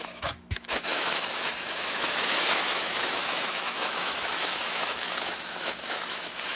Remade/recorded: remade